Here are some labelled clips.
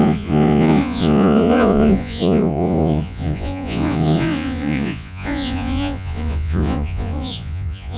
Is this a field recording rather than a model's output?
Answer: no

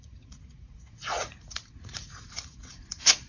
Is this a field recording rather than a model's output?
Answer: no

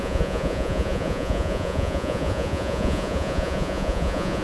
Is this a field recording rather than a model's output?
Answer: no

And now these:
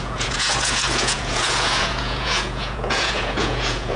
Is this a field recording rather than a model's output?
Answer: no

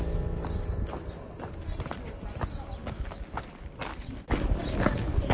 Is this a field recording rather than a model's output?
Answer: yes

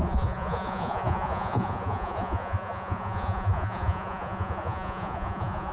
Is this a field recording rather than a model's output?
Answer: no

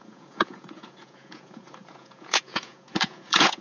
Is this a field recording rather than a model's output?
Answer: no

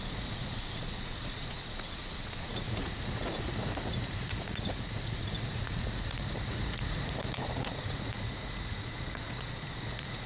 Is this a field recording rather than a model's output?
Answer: no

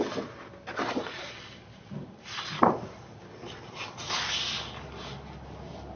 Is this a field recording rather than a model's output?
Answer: yes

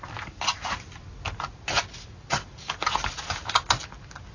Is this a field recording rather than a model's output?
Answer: yes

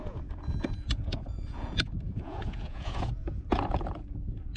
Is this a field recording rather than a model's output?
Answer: no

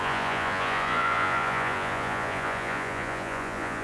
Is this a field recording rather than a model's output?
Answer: no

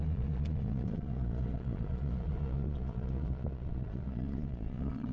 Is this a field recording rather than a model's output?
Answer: no